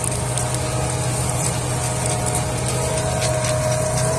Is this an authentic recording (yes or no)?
yes